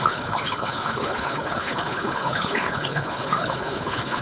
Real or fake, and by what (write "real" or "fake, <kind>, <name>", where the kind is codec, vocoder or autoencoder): fake, codec, HILCodec